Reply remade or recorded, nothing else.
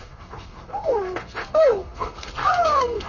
remade